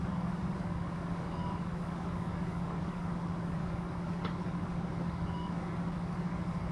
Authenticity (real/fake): fake